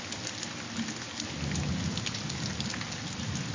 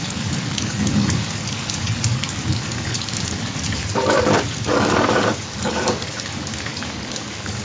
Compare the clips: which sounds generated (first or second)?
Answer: second